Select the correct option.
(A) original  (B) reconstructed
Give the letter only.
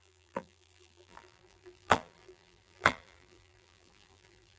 B